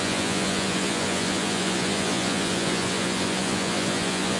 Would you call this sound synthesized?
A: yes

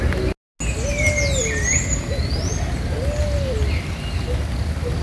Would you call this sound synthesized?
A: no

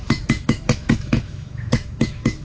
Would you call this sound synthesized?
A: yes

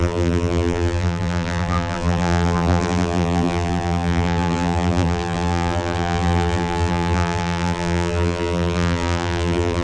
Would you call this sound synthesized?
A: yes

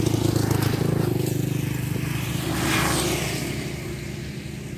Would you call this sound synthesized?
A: no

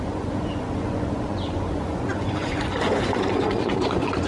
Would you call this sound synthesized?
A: yes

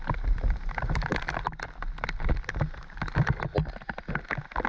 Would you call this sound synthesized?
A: no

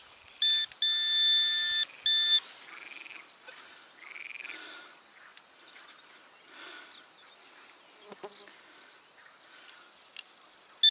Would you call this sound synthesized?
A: no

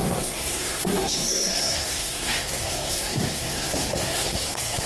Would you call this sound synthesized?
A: yes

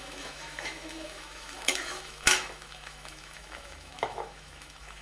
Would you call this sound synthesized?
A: yes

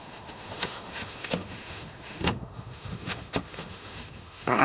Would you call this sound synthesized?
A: yes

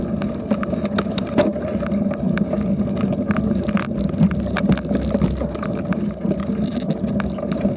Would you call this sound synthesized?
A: no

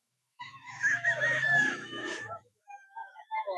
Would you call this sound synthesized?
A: yes